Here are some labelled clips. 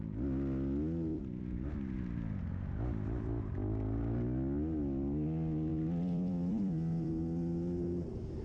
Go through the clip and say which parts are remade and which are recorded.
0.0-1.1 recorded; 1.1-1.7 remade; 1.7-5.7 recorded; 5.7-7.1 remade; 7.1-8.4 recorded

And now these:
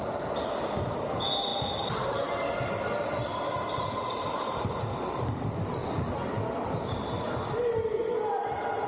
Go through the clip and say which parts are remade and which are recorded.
0.0-5.8 recorded; 5.8-6.6 remade; 6.6-8.9 recorded

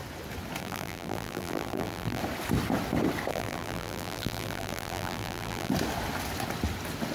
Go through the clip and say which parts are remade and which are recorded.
0.0-0.6 recorded; 0.6-2.2 remade; 2.2-3.3 recorded; 3.3-5.7 remade; 5.7-7.1 recorded

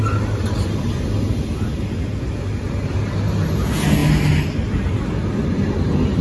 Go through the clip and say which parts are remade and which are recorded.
0.0-6.2 recorded